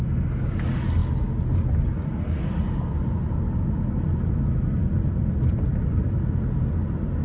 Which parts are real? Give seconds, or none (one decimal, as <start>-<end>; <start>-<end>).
0.0-4.8; 6.1-7.2